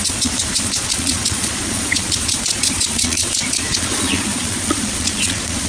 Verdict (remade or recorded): remade